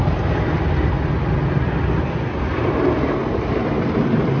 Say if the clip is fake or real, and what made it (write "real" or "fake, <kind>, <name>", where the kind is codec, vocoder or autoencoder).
real